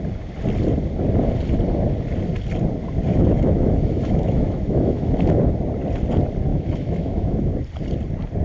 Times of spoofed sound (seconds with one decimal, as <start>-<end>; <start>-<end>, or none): 3.1-5.4; 6.5-7.5